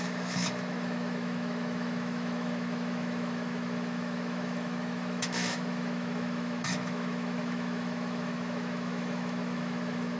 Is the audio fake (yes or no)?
yes